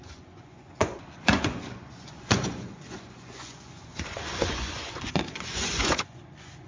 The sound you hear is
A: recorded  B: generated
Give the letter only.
B